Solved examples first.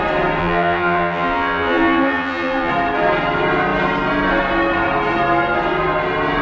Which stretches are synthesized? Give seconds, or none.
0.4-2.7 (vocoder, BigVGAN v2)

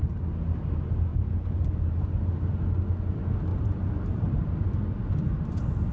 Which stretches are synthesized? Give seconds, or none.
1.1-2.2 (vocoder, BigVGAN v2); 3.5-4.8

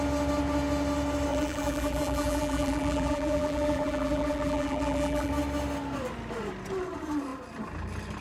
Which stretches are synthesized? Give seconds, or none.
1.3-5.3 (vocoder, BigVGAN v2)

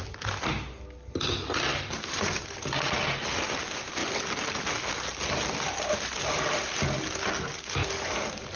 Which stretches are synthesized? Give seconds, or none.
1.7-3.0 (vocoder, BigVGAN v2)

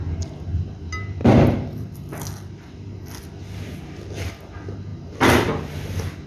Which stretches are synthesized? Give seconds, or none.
1.2-2.1 (vocoder, BigVGAN v2); 4.9-5.5